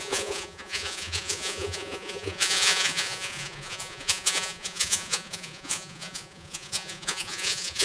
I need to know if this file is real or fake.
fake